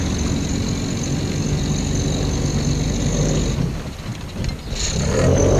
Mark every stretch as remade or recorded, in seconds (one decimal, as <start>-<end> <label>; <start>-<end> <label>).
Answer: 0.0-5.6 recorded